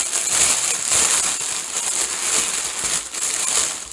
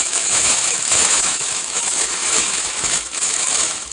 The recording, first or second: first